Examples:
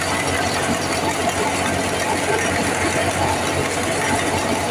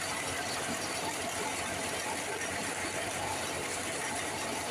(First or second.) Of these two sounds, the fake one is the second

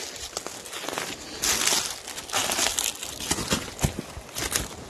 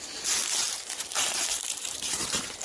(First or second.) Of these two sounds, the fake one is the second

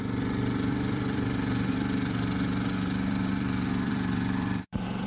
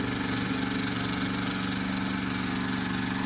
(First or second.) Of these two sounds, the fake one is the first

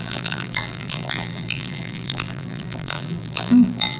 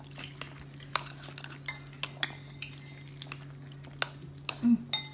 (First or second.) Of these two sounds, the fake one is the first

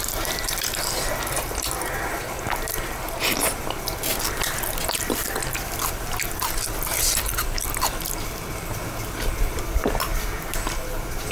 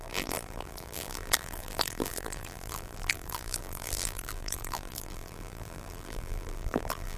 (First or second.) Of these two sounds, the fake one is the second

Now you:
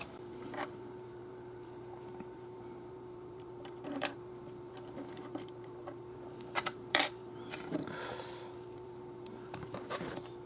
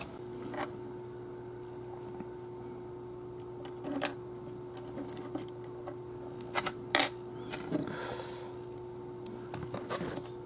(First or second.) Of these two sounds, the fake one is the first